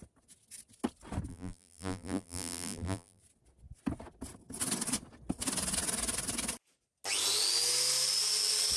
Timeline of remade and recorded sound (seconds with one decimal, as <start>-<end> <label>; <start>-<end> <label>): 0.0-1.3 recorded; 1.3-3.2 remade; 3.2-8.8 recorded